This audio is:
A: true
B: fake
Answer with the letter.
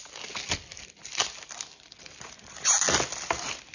A